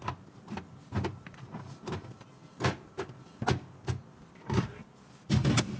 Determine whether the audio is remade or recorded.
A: recorded